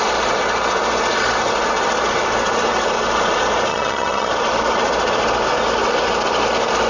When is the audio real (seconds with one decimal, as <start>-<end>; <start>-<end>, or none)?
0.0-3.7; 4.3-6.9